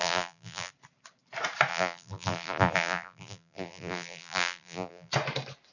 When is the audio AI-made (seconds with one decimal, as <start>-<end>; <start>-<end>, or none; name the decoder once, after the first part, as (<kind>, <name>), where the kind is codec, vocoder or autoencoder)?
0.0-0.7 (vocoder, BigVGAN v2); 1.7-5.1